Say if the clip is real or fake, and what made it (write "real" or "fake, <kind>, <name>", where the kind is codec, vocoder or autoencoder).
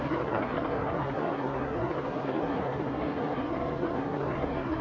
fake, codec, SNAC